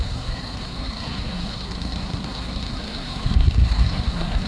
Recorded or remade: remade